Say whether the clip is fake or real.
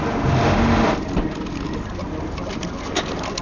real